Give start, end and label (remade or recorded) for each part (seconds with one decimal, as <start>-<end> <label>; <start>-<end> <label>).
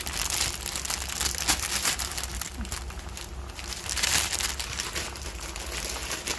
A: 0.0-6.4 recorded